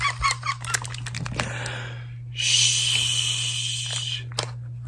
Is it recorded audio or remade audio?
recorded